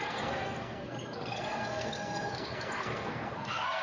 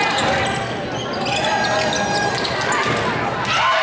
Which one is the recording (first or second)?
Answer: second